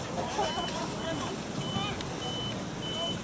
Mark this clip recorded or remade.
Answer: recorded